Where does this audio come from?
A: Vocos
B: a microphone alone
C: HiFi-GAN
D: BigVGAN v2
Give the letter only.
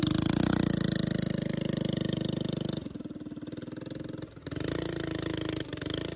B